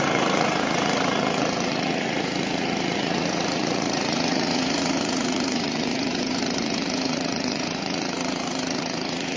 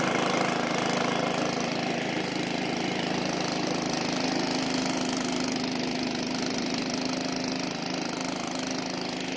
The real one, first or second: second